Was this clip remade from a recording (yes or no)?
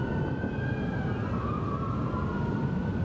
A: no